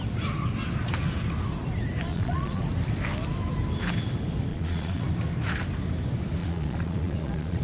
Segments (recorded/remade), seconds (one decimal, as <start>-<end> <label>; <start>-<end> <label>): 0.0-2.1 recorded; 2.1-2.6 remade; 2.6-4.5 recorded; 4.5-5.0 remade; 5.0-6.4 recorded; 6.4-7.6 remade